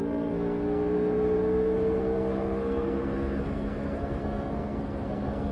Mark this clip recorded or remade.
remade